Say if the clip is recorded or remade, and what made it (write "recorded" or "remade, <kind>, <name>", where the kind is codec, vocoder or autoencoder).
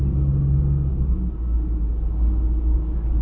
recorded